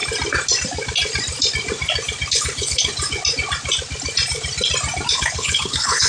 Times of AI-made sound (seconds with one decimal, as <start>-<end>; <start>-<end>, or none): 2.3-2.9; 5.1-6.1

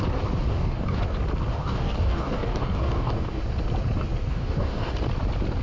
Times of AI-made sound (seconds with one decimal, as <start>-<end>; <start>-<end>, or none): 0.4-1.0; 1.5-3.4; 4.3-4.9

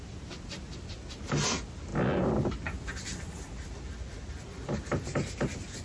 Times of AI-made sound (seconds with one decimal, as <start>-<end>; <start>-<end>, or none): none

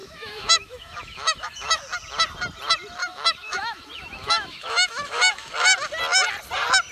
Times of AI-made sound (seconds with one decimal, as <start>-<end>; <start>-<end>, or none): 0.0-1.8; 3.0-5.5